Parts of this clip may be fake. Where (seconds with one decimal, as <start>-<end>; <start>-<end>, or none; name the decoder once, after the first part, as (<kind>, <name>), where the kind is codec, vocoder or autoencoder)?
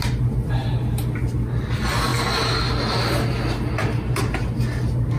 none